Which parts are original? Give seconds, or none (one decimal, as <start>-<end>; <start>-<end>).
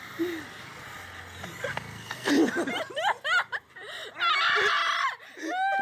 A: 0.0-1.7; 2.3-5.8